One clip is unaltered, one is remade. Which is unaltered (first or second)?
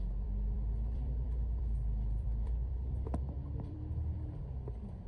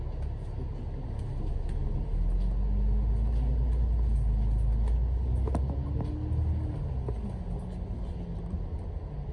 second